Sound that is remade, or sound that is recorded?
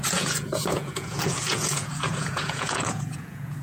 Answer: remade